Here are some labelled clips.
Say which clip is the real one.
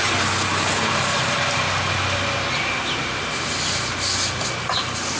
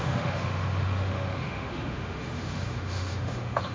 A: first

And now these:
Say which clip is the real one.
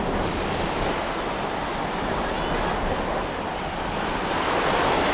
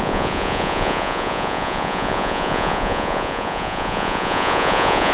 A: first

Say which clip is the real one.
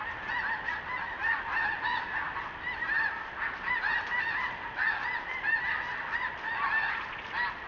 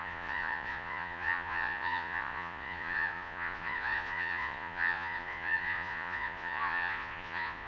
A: first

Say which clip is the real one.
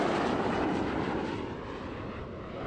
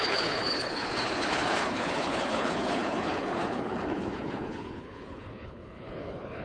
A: first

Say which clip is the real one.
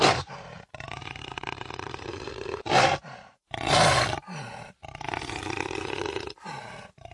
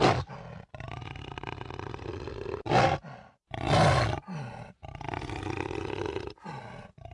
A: second